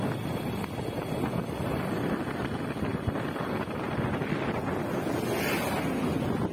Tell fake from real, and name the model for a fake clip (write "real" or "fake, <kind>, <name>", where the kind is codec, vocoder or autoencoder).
real